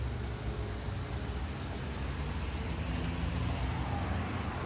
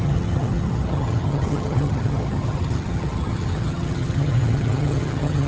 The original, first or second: first